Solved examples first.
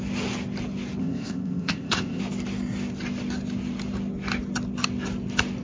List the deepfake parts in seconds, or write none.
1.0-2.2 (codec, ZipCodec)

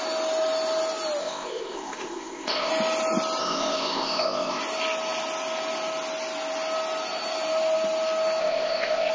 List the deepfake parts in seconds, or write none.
1.2-2.7 (codec, ZipCodec); 3.4-4.6; 8.4-9.1

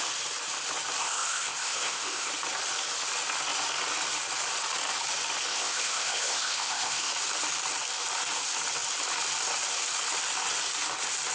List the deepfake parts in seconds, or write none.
1.0-2.3 (codec, ZipCodec); 5.5-7.1

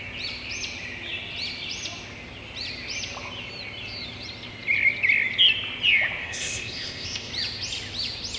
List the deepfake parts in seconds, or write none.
6.2-7.3 (codec, ZipCodec)

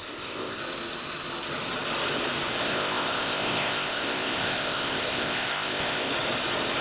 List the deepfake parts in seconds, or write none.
0.0-0.6 (codec, ZipCodec); 2.6-6.1

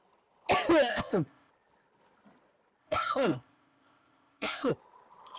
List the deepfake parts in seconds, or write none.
0.9-1.5 (codec, ZipCodec); 2.8-4.7